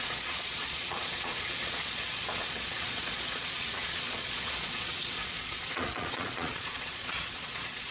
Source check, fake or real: fake